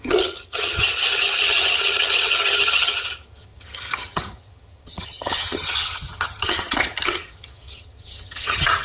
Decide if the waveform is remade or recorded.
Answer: remade